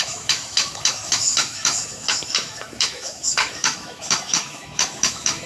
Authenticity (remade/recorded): remade